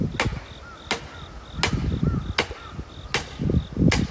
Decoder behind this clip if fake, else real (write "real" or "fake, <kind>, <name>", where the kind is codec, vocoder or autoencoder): real